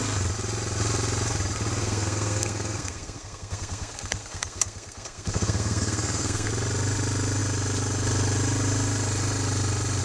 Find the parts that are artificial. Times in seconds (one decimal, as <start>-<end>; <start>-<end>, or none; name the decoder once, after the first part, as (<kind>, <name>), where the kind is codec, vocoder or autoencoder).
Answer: 1.8-6.5 (codec, SNAC)